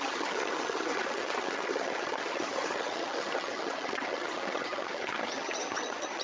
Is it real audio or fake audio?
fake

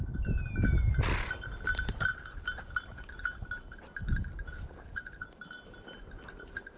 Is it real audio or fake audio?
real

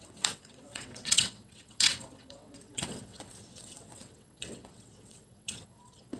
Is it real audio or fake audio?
fake